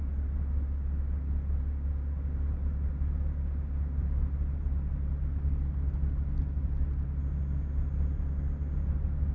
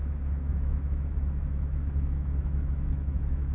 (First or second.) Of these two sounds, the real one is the first